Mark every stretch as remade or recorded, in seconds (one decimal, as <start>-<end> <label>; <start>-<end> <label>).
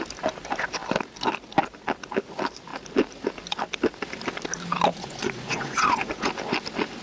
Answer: 0.0-4.9 recorded; 4.9-6.3 remade; 6.3-7.0 recorded